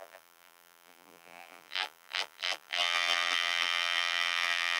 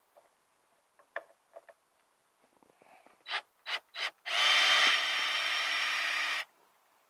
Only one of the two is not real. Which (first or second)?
first